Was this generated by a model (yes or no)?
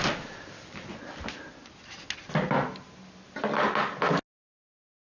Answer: no